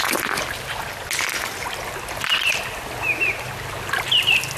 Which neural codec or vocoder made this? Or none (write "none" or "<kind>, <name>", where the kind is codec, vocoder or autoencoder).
none